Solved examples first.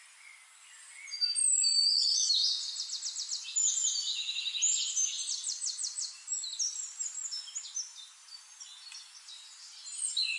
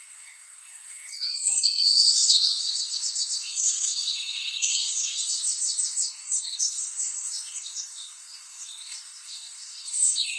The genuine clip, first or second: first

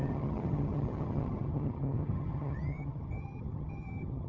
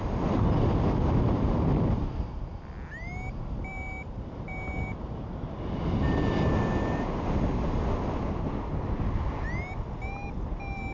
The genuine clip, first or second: second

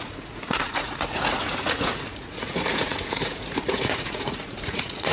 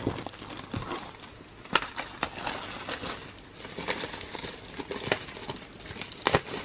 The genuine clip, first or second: second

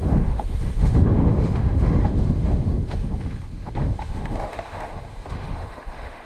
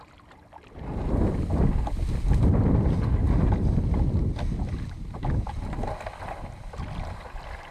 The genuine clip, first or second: second